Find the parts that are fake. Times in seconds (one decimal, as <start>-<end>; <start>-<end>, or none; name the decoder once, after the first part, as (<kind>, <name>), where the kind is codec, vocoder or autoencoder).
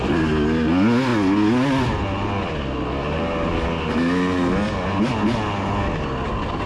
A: none